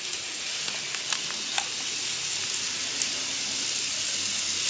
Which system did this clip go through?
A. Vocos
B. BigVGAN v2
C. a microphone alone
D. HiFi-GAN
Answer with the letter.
C